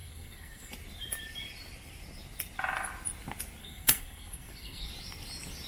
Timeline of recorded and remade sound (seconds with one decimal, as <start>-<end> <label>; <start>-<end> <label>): 0.0-0.7 remade; 0.7-3.6 recorded; 3.6-4.9 remade; 4.9-5.7 recorded